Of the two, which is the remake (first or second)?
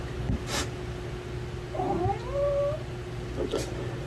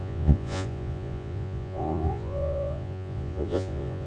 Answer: second